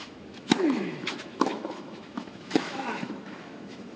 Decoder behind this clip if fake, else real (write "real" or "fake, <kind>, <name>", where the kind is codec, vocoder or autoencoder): fake, autoencoder, DAC-VAE